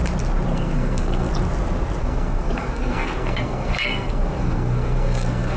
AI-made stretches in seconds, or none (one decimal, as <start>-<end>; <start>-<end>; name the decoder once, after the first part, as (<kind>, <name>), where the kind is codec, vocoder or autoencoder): 0.5-1.3 (codec, SNAC); 2.0-5.6